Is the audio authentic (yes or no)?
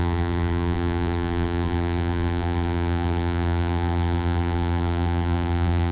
no